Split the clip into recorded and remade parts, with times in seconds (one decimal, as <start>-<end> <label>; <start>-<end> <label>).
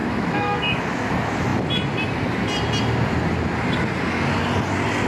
0.0-0.8 remade; 0.8-5.1 recorded